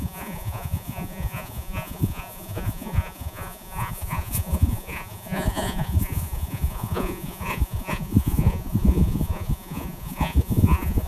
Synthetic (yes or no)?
yes